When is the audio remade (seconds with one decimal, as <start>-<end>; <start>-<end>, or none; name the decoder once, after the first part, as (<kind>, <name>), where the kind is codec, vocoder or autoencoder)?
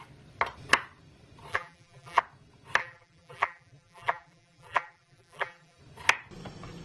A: 1.5-2.2 (vocoder, BigVGAN v2); 2.8-5.8